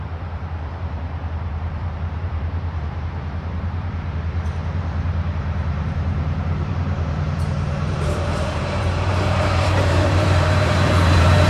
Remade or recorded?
remade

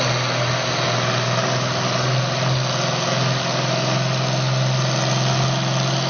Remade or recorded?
recorded